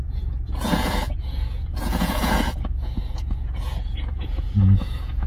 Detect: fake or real fake